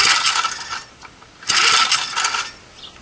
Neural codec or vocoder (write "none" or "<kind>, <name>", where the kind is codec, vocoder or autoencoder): none